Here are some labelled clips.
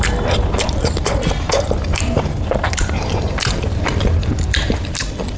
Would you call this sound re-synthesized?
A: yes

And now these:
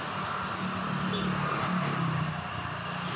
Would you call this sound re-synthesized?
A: no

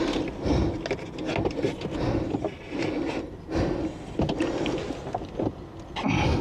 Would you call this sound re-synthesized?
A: no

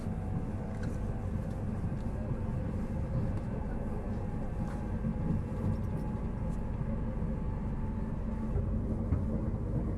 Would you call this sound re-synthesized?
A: no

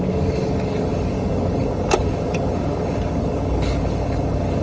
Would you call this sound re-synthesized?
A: yes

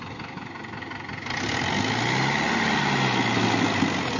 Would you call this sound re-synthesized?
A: no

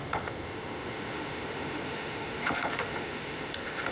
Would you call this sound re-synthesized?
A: yes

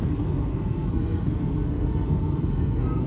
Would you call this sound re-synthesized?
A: yes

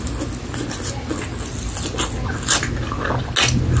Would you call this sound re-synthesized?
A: no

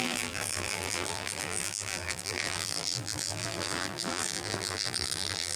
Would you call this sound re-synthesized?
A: yes